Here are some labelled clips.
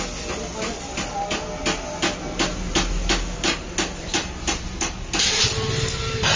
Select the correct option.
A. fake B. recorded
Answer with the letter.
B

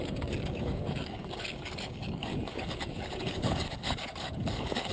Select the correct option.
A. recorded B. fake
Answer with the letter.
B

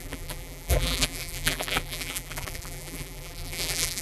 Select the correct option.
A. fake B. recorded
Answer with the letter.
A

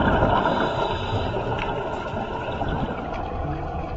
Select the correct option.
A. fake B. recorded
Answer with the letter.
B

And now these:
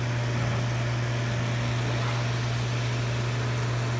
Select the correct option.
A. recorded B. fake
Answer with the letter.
A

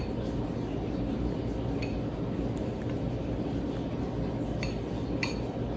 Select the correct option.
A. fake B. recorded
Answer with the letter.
B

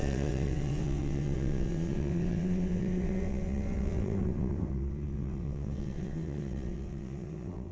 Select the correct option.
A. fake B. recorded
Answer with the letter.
A